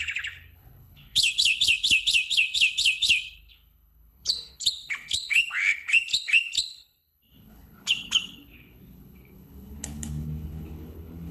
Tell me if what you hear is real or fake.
fake